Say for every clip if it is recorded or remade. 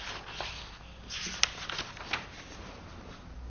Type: recorded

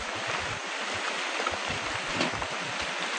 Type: recorded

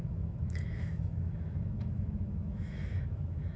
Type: remade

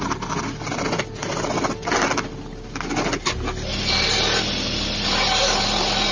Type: recorded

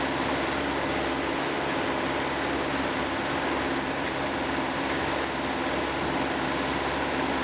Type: recorded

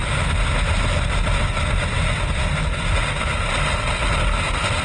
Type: recorded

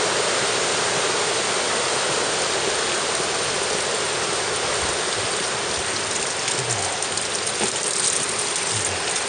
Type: recorded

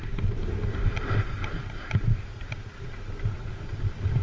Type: recorded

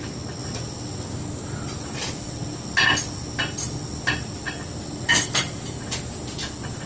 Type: recorded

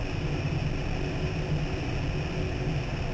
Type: recorded